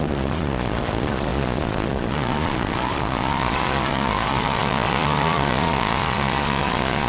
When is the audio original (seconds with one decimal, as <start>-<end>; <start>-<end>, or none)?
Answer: none